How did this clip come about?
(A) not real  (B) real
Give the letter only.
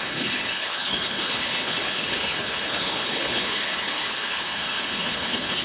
A